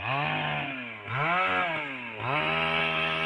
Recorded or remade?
recorded